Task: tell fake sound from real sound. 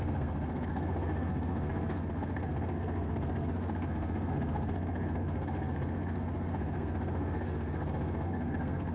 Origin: fake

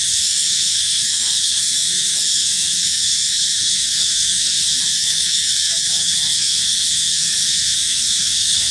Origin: fake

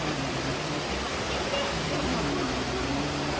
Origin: real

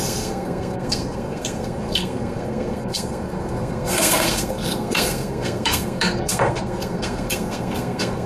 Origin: fake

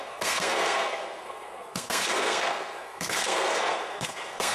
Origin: fake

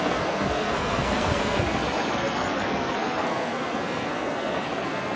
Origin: fake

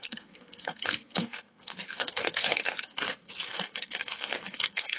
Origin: fake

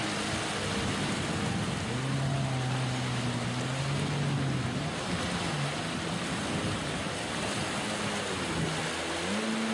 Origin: real